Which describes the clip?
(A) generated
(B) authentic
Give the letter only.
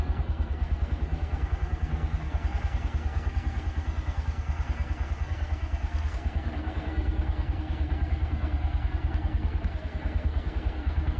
A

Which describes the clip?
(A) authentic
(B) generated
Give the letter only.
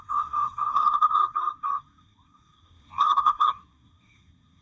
B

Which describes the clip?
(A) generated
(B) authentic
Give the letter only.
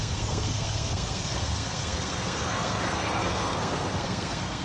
A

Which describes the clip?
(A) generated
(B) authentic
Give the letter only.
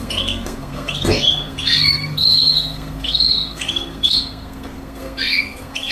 A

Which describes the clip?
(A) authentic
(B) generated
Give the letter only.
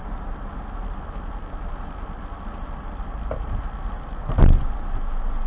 A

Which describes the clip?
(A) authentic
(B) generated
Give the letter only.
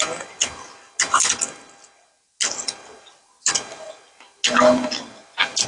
A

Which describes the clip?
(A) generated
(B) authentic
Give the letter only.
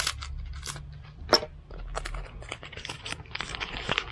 B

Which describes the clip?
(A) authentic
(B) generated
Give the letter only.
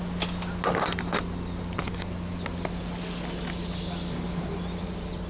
A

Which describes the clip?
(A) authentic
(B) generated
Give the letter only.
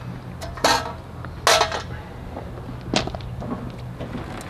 A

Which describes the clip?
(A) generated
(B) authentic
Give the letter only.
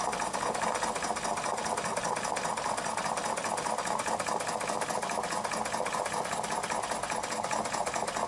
B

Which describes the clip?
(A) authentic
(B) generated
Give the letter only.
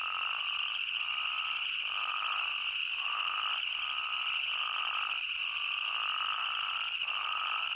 A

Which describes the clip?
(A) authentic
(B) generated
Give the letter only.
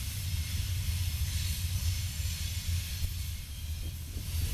A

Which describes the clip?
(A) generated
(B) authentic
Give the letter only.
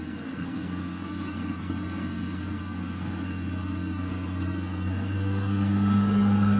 A